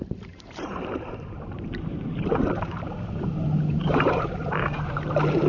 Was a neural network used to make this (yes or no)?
yes